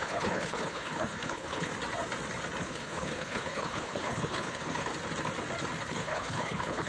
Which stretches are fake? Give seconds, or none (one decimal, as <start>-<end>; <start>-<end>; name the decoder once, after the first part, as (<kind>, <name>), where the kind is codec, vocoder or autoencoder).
0.0-1.7 (codec, HILCodec); 2.6-4.9; 5.9-6.9